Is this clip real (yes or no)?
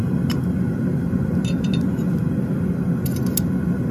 yes